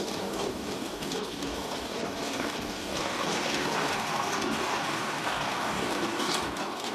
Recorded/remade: remade